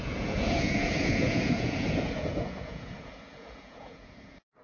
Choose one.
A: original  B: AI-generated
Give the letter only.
B